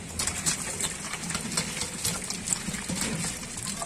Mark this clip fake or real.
real